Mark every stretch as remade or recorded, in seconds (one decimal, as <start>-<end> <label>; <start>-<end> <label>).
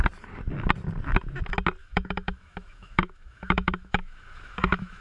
0.0-1.8 recorded; 1.8-5.0 remade